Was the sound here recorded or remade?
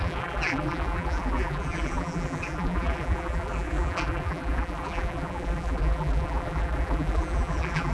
remade